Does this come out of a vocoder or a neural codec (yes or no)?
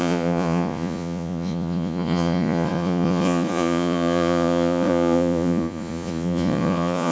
yes